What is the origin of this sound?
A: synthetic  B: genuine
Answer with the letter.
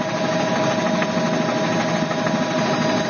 B